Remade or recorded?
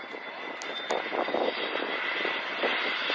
recorded